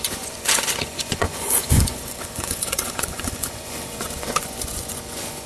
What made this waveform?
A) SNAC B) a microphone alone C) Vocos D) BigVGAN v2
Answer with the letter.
C